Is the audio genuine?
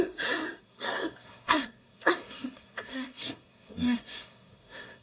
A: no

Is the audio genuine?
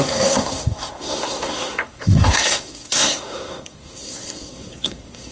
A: no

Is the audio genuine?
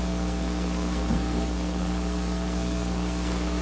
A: no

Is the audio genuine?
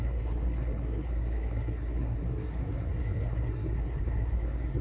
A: no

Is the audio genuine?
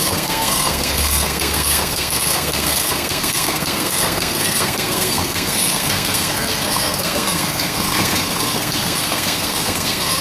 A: no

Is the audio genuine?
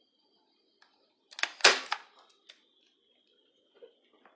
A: yes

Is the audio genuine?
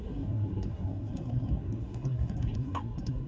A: no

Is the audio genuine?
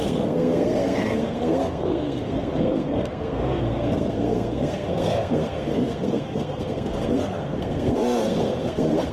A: no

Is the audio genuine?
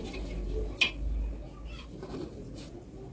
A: yes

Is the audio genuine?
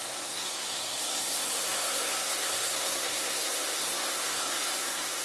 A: no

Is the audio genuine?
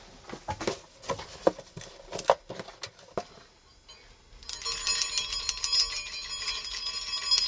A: yes